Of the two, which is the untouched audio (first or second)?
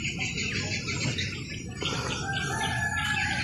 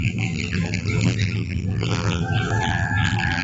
first